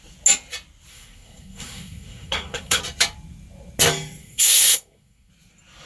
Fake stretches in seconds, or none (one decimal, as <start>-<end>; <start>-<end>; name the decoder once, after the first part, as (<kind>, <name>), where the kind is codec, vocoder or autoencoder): 0.9-2.8 (codec, SNAC); 4.2-5.3